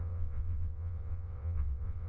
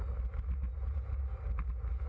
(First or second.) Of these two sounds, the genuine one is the second